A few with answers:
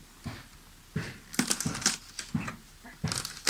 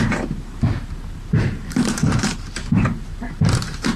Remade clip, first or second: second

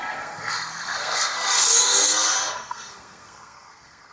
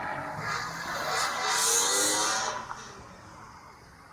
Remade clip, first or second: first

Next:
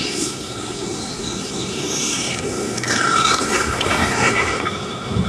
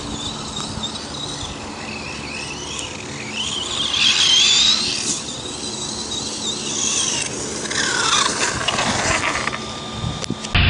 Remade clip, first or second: first